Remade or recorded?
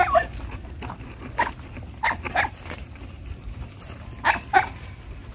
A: recorded